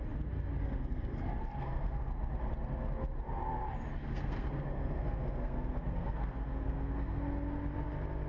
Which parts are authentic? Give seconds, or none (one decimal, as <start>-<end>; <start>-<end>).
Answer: 0.0-0.6; 2.1-4.0; 7.2-8.3